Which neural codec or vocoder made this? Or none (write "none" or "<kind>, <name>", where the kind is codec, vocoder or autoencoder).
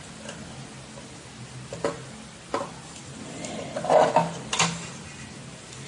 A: none